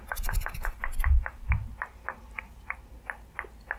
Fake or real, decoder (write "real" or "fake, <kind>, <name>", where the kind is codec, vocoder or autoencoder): real